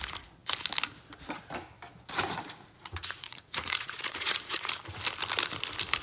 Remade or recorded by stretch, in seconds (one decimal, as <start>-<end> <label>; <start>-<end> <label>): 0.0-2.2 recorded; 2.2-4.8 remade; 4.8-6.0 recorded